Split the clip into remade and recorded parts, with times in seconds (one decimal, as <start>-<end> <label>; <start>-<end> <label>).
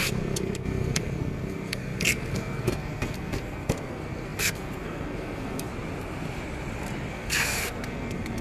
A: 0.0-5.7 remade; 5.7-7.1 recorded; 7.1-8.4 remade